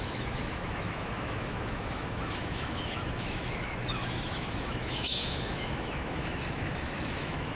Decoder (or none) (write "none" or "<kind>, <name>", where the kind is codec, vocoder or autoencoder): autoencoder, DAC-VAE